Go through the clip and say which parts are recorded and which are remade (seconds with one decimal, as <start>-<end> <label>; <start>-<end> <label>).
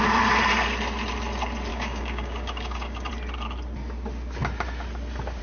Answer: 0.0-1.7 recorded; 1.7-3.1 remade; 3.1-5.4 recorded